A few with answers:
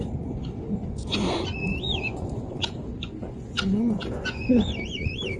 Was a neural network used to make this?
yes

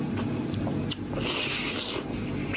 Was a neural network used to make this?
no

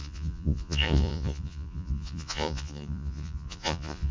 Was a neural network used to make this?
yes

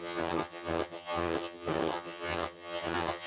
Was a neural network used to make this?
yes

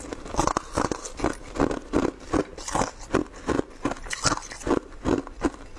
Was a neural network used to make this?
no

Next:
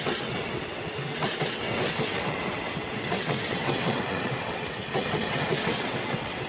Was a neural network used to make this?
yes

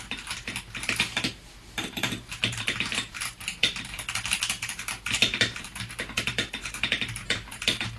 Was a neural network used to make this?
yes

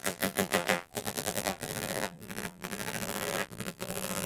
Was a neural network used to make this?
yes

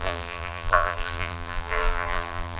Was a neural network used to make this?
yes